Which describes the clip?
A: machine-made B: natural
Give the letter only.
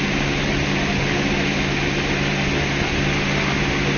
B